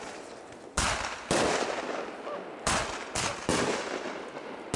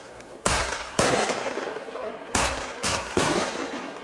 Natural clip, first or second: first